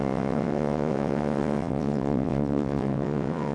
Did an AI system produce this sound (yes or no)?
yes